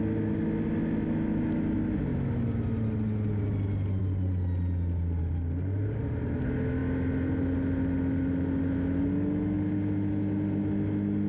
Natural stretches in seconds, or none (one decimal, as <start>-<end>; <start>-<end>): 0.0-11.3